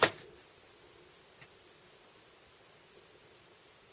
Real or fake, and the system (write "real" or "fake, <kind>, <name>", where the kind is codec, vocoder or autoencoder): real